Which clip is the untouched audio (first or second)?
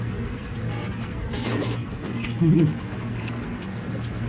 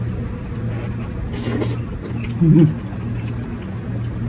second